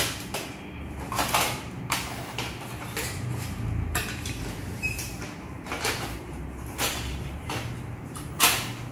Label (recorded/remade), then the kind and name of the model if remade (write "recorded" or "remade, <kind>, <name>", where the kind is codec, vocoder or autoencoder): remade, vocoder, BigVGAN v2